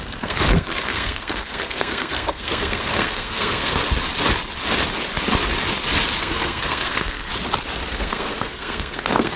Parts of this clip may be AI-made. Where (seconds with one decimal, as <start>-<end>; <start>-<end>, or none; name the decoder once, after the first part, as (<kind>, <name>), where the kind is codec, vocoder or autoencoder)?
0.0-3.8 (codec, SNAC); 6.2-7.3; 7.9-9.4